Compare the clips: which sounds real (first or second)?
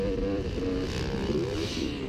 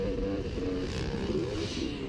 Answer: first